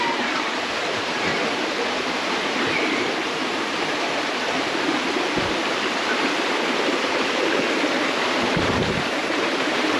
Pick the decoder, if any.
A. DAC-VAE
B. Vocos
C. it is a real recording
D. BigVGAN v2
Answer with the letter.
D